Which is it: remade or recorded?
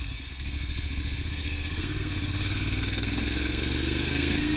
remade